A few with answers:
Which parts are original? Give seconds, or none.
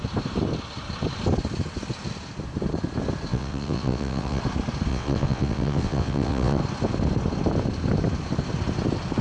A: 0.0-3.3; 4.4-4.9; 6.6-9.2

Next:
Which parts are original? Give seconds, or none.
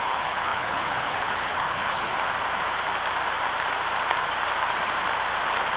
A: 2.1-5.8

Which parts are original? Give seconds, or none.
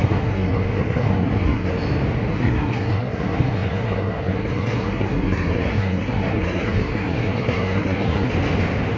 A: 1.7-2.3; 8.3-9.0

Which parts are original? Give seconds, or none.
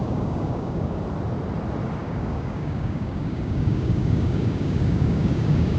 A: 1.0-2.0